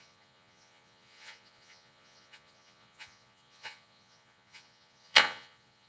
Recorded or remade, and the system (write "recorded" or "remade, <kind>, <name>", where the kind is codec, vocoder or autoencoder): remade, vocoder, Vocos